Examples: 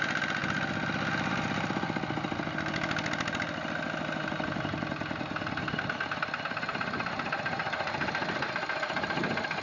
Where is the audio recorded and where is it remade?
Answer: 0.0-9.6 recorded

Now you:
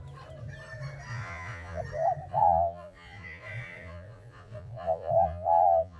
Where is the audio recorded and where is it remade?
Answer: 0.0-1.1 recorded; 1.1-1.8 remade; 1.8-2.3 recorded; 2.3-6.0 remade

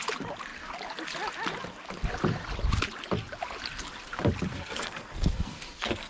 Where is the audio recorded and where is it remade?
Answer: 0.0-4.5 recorded; 4.5-6.1 remade

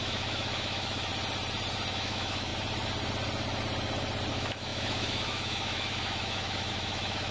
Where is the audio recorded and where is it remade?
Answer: 0.0-1.1 remade; 1.1-1.9 recorded; 1.9-2.5 remade; 2.5-4.3 recorded; 4.3-7.3 remade

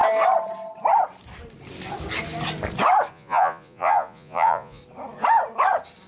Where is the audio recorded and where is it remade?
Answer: 0.0-3.1 recorded; 3.1-4.8 remade; 4.8-6.1 recorded